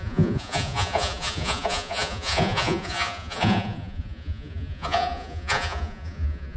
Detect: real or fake fake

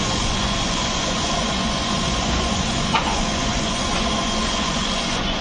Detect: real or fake fake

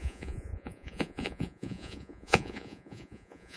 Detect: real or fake fake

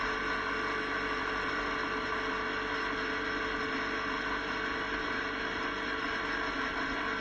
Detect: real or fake real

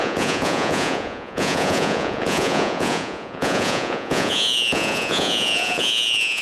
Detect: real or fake fake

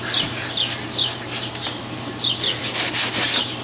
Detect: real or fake real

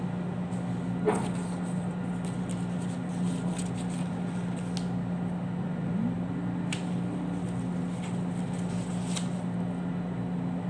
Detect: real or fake real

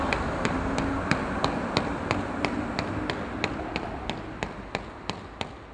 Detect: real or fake real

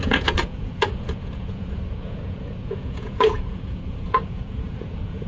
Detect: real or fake fake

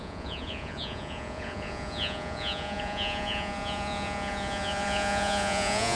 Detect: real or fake fake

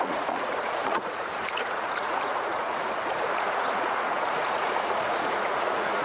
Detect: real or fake fake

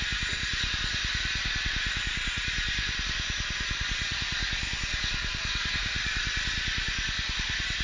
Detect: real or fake real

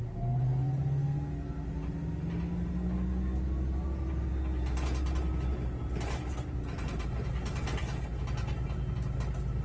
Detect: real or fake real